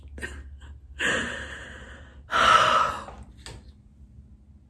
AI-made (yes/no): no